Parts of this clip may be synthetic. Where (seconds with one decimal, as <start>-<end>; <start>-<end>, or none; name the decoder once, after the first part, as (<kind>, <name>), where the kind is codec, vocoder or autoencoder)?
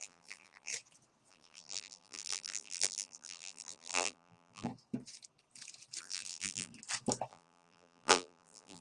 0.0-0.7 (vocoder, BigVGAN v2); 1.3-4.7; 6.0-6.7; 7.3-8.8